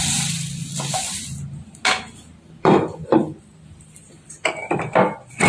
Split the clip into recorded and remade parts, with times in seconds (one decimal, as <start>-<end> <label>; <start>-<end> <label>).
0.0-1.8 remade; 1.8-2.4 recorded; 2.4-3.0 remade; 3.0-3.7 recorded; 3.7-5.5 remade